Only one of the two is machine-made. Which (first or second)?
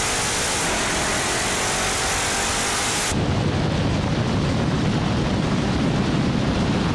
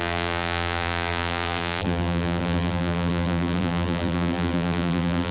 second